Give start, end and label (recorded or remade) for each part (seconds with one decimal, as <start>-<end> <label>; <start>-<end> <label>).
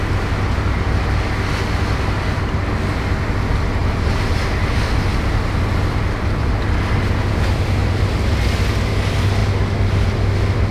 0.0-3.8 recorded; 3.8-4.4 remade; 4.4-10.7 recorded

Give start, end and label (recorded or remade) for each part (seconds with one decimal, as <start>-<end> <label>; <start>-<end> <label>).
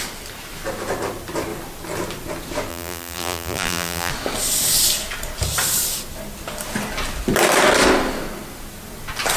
0.0-2.7 recorded; 2.7-4.1 remade; 4.1-9.4 recorded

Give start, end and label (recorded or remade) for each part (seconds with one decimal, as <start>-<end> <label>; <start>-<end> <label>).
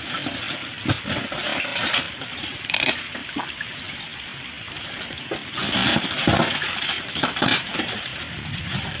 0.0-1.7 recorded; 1.7-3.3 remade; 3.3-5.8 recorded; 5.8-8.6 remade; 8.6-9.0 recorded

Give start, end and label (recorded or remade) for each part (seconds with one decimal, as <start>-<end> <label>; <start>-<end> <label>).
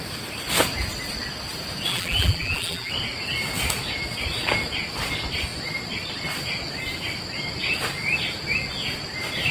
0.0-1.9 recorded; 1.9-2.9 remade; 2.9-9.5 recorded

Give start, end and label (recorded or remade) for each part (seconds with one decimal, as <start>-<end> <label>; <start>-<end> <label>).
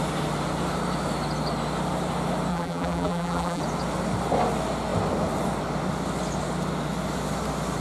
0.0-2.5 recorded; 2.5-3.6 remade; 3.6-7.8 recorded